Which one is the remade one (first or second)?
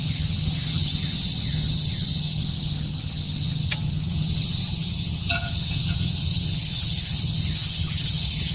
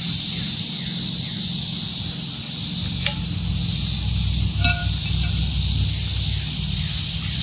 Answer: first